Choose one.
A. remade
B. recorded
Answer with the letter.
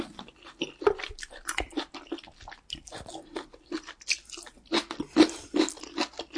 B